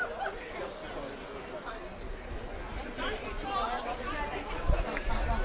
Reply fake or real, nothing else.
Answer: real